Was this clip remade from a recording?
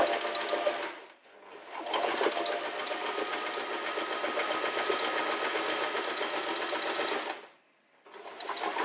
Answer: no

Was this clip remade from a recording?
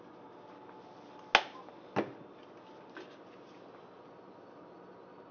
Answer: no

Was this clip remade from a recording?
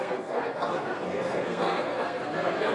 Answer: yes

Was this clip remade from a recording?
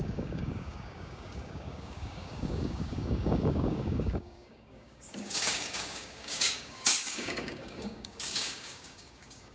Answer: yes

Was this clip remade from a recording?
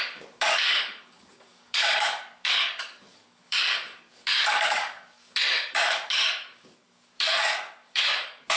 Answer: yes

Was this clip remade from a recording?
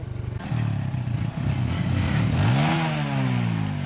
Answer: no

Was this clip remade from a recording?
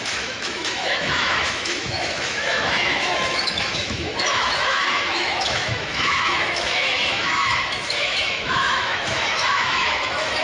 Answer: yes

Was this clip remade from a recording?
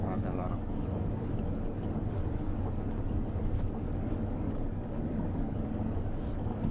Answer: yes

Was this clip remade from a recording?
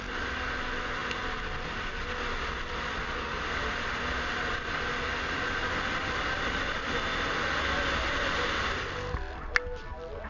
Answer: no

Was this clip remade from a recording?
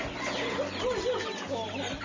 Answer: no